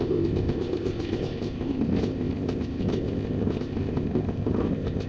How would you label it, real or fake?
fake